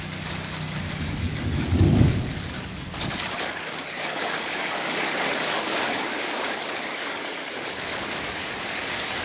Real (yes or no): no